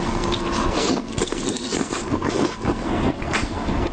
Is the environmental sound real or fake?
fake